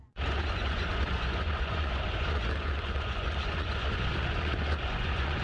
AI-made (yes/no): yes